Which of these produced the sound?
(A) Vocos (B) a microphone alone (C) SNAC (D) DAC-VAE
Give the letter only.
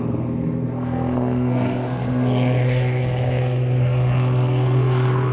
C